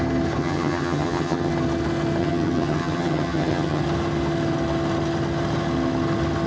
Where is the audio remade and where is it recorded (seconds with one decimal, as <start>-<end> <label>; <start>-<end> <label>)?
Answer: 0.0-0.4 recorded; 0.4-1.5 remade; 1.5-2.2 recorded; 2.2-3.8 remade; 3.8-6.5 recorded